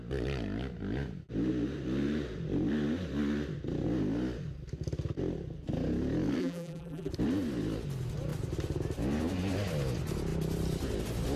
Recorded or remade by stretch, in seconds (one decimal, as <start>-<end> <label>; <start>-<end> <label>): 0.0-6.4 recorded; 6.4-7.1 remade; 7.1-11.4 recorded